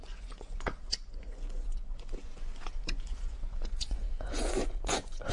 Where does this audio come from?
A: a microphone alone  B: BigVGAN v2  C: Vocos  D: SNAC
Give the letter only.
C